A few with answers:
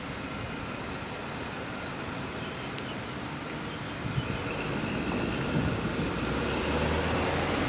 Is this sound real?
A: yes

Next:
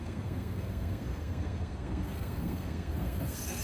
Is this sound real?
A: no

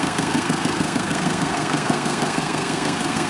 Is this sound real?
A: no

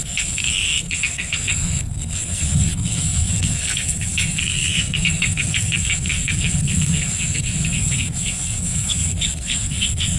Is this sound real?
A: no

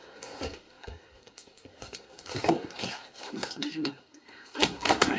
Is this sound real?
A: no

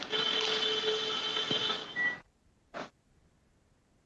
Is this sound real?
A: yes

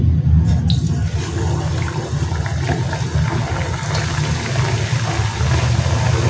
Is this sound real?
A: yes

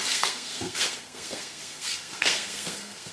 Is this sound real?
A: no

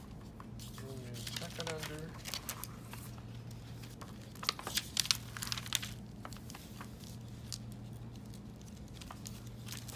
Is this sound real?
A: yes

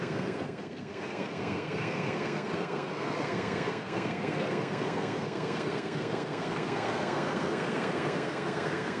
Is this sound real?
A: no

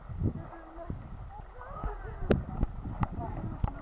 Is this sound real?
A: yes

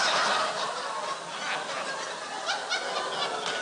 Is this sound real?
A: yes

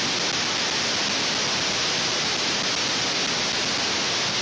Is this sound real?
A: yes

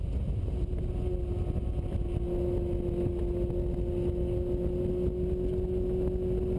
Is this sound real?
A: yes